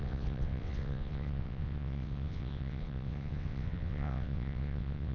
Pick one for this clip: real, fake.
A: fake